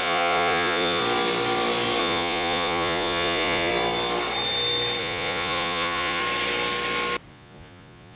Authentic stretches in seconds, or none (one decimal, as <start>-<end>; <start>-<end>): 1.0-2.0; 3.7-5.0; 6.2-7.3